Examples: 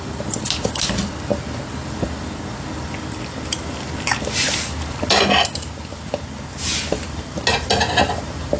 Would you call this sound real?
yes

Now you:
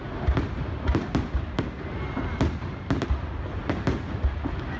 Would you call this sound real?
yes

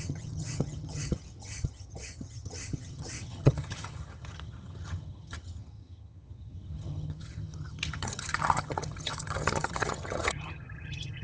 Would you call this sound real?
no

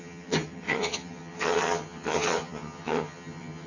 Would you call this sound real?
no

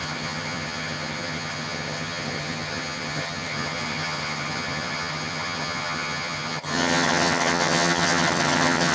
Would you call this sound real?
no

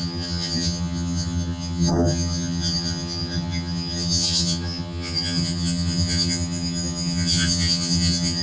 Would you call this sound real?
no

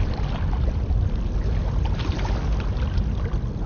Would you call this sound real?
yes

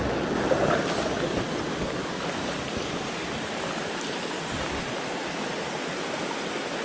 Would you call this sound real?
yes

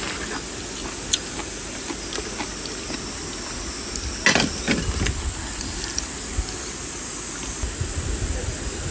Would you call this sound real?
yes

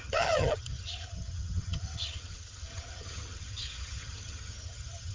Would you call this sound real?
no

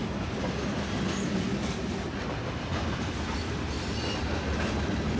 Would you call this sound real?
yes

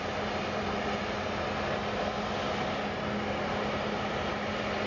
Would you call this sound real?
yes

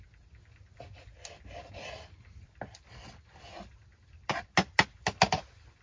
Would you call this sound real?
yes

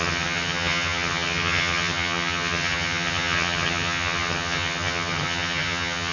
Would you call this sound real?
no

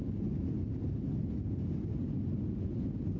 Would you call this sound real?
yes